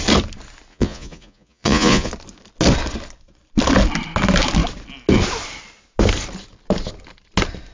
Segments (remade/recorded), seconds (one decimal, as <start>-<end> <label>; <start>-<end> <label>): 0.0-0.7 recorded; 0.7-2.1 remade; 2.1-7.7 recorded